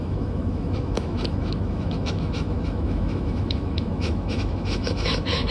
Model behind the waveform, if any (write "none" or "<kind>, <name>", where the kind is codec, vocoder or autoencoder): autoencoder, DAC-VAE